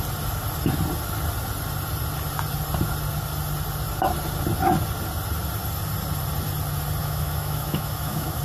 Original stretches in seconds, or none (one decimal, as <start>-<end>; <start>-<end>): 0.0-7.0